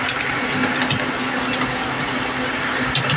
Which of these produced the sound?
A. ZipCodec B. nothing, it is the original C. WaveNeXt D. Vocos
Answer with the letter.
B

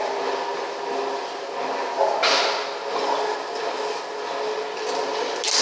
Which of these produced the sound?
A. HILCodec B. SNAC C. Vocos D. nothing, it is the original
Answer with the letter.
D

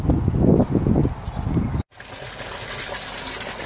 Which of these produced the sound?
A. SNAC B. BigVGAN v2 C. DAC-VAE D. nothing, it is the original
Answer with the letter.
D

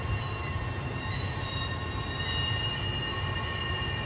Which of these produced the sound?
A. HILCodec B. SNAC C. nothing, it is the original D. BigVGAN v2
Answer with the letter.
D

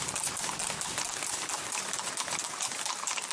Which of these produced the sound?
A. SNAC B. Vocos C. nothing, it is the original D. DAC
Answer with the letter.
C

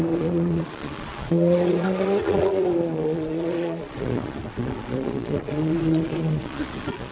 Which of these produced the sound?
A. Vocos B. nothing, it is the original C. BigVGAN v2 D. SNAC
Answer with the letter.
A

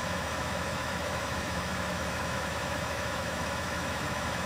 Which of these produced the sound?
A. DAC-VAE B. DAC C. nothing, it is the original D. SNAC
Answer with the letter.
A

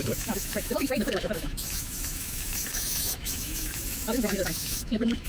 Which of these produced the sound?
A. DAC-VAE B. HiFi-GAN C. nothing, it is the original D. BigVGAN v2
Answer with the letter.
A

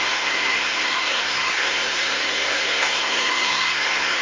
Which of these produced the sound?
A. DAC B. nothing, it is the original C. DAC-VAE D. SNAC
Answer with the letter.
D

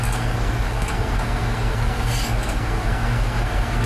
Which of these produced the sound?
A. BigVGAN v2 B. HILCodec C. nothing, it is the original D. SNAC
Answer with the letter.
D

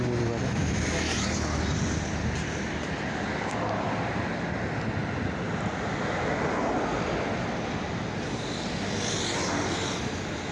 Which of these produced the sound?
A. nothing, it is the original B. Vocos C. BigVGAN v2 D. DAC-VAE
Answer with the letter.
A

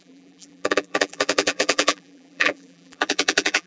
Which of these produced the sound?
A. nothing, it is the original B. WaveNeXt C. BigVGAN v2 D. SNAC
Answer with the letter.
C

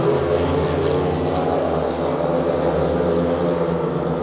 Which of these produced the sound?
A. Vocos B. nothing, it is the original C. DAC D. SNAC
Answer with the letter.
B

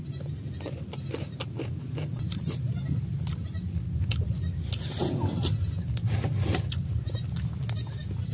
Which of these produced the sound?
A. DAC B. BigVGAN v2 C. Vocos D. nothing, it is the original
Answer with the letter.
D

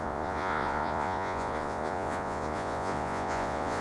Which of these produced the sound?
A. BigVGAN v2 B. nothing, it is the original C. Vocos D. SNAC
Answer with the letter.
C